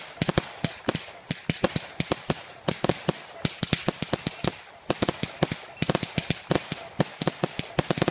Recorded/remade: recorded